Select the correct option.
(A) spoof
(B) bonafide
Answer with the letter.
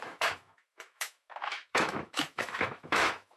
A